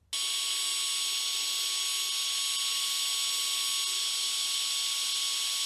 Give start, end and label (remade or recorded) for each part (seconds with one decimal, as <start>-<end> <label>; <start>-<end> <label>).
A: 0.0-5.7 recorded